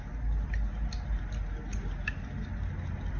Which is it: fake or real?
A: real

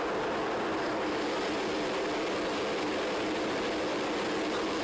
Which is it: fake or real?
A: real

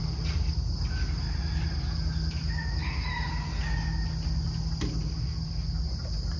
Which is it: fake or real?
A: real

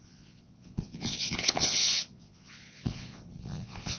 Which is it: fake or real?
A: fake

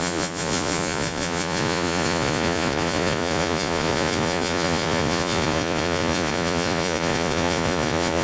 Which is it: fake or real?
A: fake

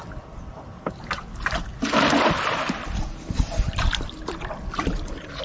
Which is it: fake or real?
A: real